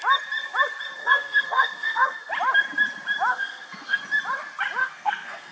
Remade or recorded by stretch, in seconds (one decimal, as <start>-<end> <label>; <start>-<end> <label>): 0.0-1.0 recorded; 1.0-2.3 remade; 2.3-3.3 recorded; 3.3-4.0 remade; 4.0-4.8 recorded; 4.8-5.5 remade